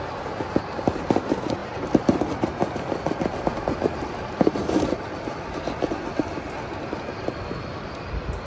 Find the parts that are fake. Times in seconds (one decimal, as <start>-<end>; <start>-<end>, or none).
none